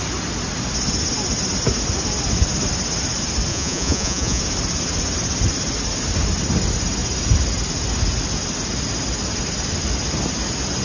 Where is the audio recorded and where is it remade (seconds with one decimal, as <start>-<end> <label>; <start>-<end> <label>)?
0.0-3.5 recorded; 3.5-4.4 remade; 4.4-10.8 recorded